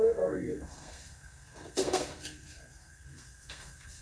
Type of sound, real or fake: fake